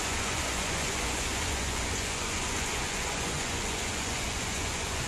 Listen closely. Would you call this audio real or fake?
fake